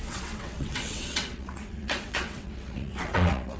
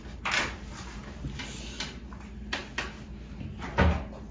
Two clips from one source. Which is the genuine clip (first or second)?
second